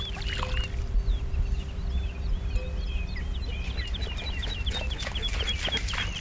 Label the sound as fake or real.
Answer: real